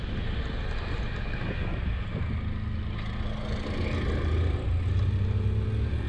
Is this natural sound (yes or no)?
yes